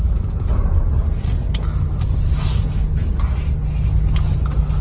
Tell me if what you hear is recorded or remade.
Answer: recorded